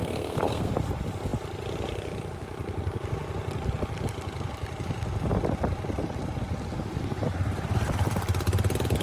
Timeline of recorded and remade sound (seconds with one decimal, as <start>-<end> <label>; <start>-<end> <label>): 0.0-0.7 remade; 0.7-9.0 recorded